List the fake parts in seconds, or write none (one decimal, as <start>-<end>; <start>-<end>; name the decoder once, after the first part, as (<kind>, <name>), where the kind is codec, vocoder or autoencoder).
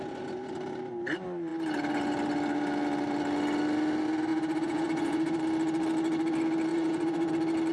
4.3-5.4 (vocoder, Vocos); 6.7-7.3